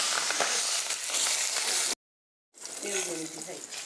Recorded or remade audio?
recorded